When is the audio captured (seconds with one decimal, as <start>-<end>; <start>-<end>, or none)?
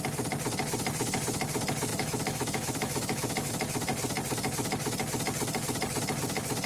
0.0-1.9; 3.5-6.7